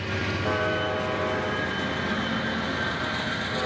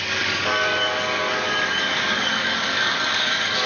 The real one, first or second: first